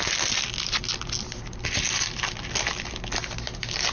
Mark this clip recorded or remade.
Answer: recorded